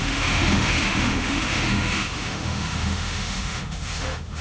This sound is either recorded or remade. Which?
remade